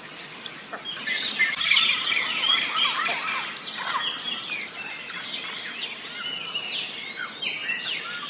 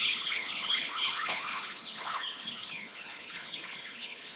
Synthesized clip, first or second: second